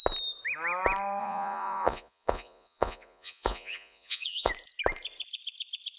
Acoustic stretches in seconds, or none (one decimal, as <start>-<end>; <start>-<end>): 0.0-1.2; 4.5-6.0